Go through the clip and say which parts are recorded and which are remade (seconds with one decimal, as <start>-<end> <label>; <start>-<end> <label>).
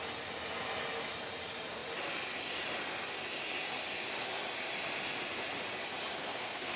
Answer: 0.0-6.2 recorded; 6.2-6.8 remade